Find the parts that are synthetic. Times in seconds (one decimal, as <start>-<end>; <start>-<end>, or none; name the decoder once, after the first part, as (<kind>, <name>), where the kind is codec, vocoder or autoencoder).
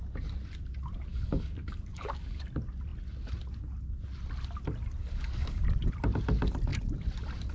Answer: 1.1-2.4 (codec, DAC); 5.0-5.6